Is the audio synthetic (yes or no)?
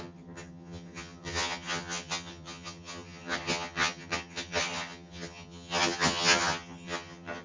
yes